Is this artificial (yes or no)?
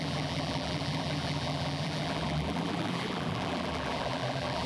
yes